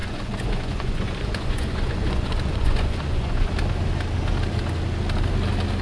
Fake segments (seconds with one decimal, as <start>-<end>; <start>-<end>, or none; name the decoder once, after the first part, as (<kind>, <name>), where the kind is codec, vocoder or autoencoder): 0.0-3.5 (vocoder, Vocos)